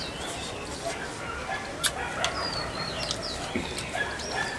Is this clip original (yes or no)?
yes